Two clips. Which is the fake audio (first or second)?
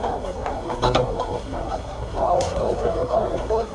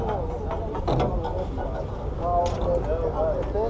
first